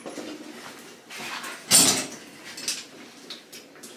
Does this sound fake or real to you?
real